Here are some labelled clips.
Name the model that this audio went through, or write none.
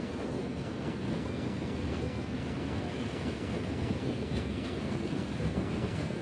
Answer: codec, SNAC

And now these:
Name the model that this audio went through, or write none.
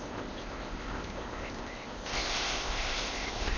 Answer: codec, ZipCodec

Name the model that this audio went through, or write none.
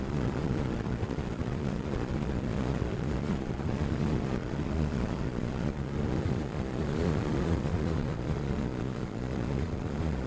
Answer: vocoder, Vocos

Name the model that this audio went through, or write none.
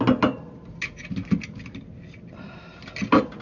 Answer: none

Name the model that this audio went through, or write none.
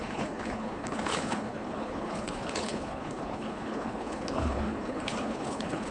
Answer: codec, HILCodec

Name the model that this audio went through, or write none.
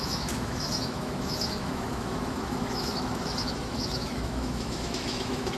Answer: autoencoder, DAC-VAE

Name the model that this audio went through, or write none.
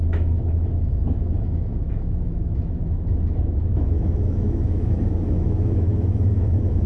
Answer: autoencoder, DAC-VAE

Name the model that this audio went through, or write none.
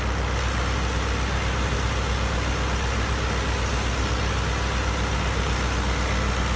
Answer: none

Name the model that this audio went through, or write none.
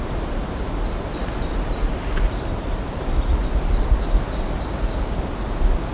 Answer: none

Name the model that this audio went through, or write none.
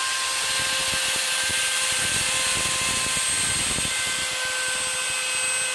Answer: none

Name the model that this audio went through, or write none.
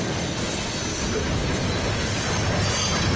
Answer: none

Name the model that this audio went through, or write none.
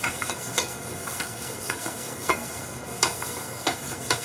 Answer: codec, SNAC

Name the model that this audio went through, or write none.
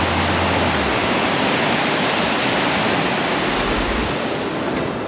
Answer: none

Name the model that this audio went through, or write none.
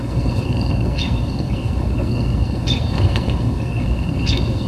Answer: codec, SNAC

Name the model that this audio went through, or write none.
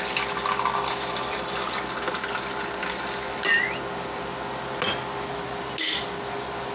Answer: none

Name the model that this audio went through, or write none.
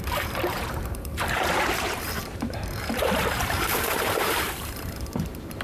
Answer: vocoder, BigVGAN v2